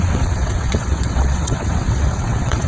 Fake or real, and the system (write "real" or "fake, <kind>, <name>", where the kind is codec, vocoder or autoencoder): fake, vocoder, WaveNeXt